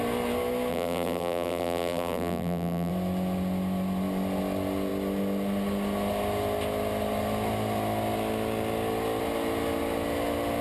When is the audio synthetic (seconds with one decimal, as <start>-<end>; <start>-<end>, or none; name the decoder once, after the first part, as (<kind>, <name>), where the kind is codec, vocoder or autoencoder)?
0.7-2.9 (vocoder, BigVGAN v2)